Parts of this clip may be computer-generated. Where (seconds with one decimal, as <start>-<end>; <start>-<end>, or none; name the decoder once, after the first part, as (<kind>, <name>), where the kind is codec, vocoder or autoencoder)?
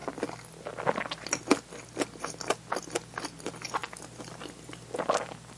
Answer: none